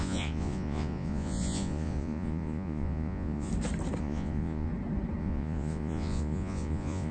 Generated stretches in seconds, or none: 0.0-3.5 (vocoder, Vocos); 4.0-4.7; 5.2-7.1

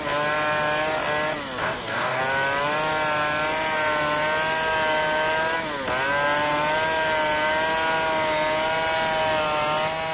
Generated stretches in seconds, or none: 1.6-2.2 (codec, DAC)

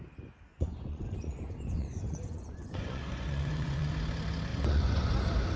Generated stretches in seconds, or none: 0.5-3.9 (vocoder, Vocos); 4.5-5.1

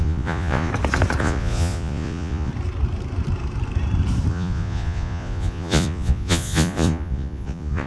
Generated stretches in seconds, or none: 0.0-0.7 (vocoder, Vocos); 1.2-2.5; 4.3-7.9